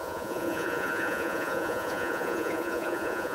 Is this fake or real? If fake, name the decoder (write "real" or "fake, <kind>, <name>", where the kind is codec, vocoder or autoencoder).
fake, vocoder, Vocos